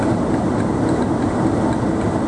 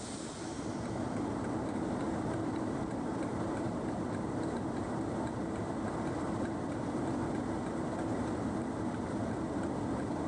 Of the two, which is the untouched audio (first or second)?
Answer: first